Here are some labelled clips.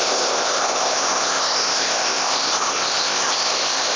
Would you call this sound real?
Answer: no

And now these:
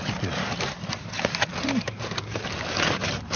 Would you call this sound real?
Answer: no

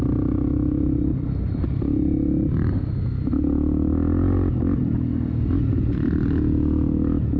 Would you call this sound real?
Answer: yes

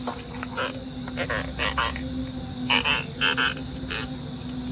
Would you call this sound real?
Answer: yes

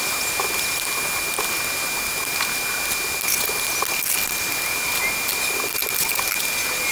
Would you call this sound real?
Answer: yes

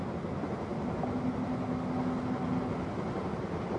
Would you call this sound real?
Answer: yes